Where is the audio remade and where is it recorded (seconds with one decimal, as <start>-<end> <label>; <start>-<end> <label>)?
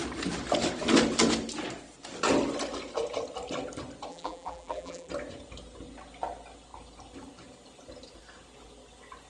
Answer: 0.0-4.1 recorded; 4.1-5.1 remade; 5.1-9.3 recorded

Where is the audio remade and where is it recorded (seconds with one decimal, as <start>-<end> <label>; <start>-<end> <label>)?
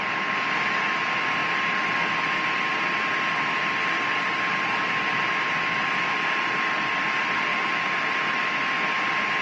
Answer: 0.0-9.4 recorded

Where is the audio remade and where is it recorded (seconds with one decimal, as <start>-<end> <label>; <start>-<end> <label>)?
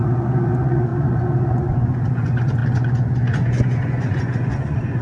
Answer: 0.0-5.0 remade